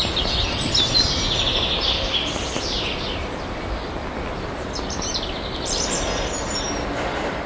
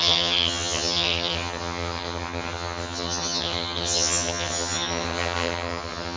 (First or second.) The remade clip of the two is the second